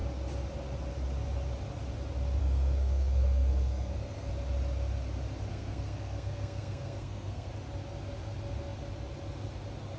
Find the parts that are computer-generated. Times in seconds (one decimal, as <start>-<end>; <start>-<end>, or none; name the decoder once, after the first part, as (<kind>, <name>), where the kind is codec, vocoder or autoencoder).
2.4-4.3 (codec, SNAC); 5.5-7.5